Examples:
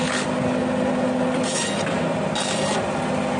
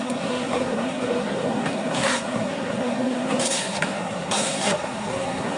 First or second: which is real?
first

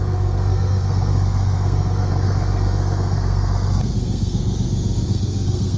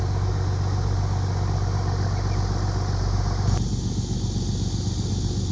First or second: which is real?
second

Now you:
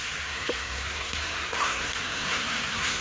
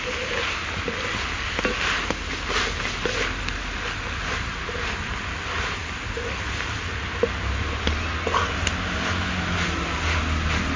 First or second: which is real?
second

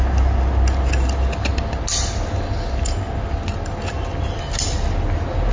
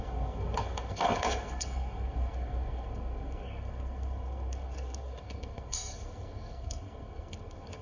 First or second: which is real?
first